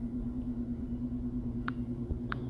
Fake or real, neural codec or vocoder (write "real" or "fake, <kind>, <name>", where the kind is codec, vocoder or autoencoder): fake, vocoder, Vocos